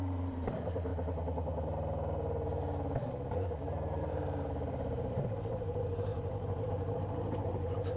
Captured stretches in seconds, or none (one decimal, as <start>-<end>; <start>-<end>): 0.9-4.1